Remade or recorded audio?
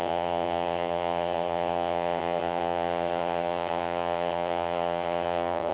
remade